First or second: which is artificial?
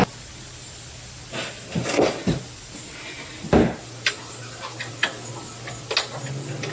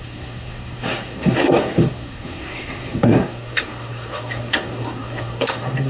second